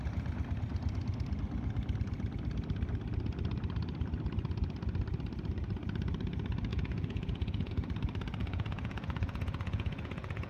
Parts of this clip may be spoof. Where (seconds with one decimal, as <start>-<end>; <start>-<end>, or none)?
6.7-7.7; 8.4-10.5